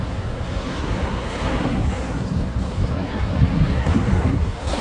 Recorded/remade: remade